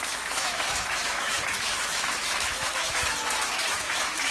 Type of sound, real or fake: fake